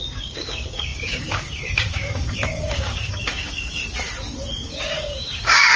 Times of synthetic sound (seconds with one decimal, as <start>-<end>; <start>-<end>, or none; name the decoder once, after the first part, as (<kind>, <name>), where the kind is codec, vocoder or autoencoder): 0.0-3.8 (codec, DAC); 4.6-5.8